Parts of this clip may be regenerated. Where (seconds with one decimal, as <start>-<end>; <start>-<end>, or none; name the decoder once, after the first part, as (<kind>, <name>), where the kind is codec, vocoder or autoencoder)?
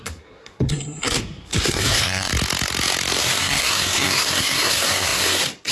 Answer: 0.0-2.3 (codec, SNAC); 3.2-5.7